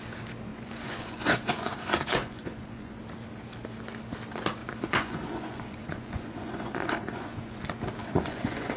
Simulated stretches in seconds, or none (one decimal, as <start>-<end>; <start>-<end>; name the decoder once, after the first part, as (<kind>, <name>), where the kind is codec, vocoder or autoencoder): 0.5-3.0 (vocoder, Vocos); 4.6-7.6; 8.0-8.8